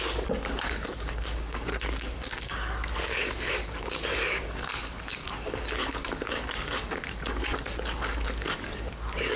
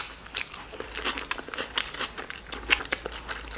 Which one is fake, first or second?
first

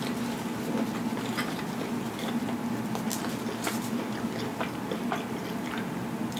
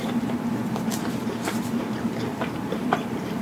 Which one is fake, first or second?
second